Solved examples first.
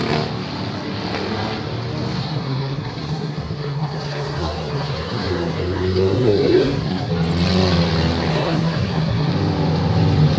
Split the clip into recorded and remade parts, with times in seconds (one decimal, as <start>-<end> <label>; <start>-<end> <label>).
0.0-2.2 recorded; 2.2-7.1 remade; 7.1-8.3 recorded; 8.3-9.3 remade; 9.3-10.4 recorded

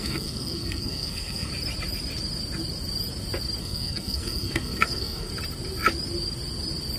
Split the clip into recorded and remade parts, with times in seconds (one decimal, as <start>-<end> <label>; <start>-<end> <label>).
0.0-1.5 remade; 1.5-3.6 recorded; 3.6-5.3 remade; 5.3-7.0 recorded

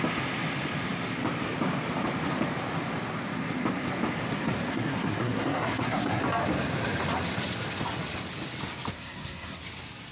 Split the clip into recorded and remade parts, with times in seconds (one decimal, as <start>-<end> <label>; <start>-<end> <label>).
0.0-4.7 recorded; 4.7-6.2 remade; 6.2-8.9 recorded; 8.9-9.6 remade; 9.6-10.1 recorded